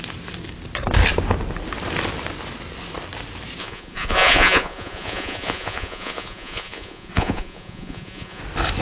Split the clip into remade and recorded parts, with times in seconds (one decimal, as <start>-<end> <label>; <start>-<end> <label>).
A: 0.0-3.6 recorded; 3.6-8.4 remade; 8.4-8.8 recorded